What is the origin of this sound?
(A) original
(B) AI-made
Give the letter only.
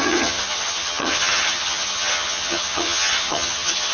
B